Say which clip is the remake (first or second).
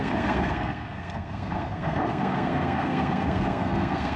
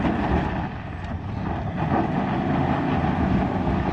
first